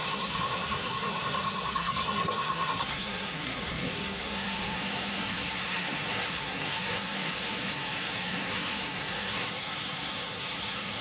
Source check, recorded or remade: remade